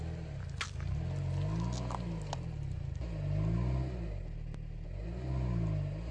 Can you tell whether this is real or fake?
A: real